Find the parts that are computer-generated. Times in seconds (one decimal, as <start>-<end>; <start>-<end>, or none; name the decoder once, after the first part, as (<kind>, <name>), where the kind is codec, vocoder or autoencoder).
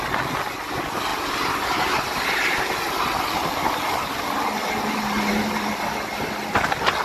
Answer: 1.1-5.3 (vocoder, BigVGAN v2)